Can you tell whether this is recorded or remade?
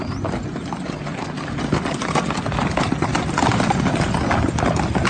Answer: recorded